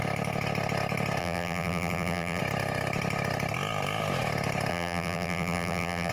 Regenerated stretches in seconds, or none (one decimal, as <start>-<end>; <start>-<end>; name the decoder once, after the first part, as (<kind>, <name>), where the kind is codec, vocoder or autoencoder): 1.2-2.4 (vocoder, BigVGAN v2); 4.7-6.1